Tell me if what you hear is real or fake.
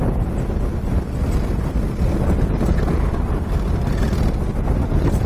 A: real